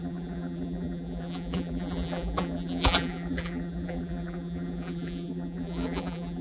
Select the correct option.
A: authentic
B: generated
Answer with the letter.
B